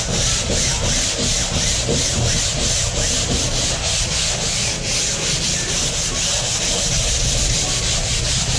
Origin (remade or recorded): recorded